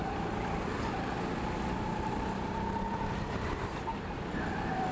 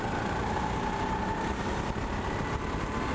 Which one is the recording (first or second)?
second